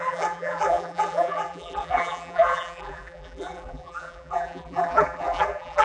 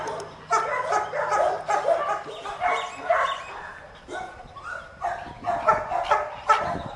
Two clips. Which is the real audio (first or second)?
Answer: second